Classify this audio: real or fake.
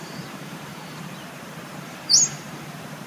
fake